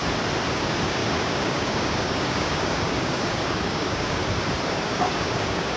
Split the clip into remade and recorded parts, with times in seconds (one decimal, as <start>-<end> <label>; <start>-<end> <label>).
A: 0.0-0.5 recorded; 0.5-4.2 remade; 4.2-4.7 recorded; 4.7-5.8 remade